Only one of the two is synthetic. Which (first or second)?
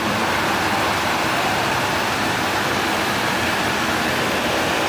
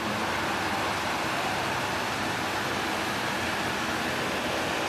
first